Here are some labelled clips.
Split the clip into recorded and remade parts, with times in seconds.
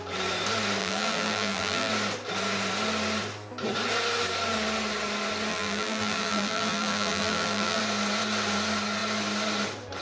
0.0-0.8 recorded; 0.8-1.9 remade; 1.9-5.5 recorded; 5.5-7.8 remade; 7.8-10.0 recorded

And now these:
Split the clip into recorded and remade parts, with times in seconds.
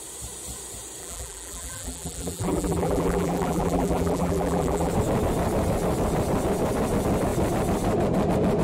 0.0-1.0 recorded; 1.0-4.9 remade; 4.9-8.6 recorded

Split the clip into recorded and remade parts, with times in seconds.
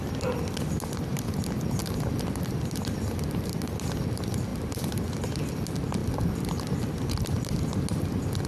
0.0-1.8 recorded; 1.8-4.0 remade; 4.0-4.5 recorded; 4.5-5.1 remade; 5.1-6.0 recorded; 6.0-7.6 remade; 7.6-8.5 recorded